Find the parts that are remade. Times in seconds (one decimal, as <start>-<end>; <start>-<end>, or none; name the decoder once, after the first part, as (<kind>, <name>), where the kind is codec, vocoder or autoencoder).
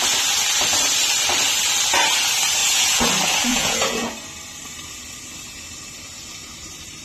2.6-3.1 (vocoder, Vocos); 3.5-4.1